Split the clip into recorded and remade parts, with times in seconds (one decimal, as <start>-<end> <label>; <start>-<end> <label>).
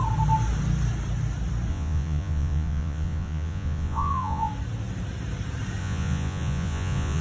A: 0.0-1.7 recorded; 1.7-4.5 remade; 4.5-5.8 recorded; 5.8-7.2 remade